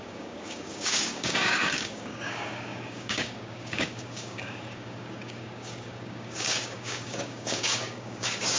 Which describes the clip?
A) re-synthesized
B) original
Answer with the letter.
A